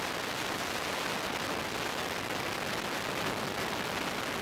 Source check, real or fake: real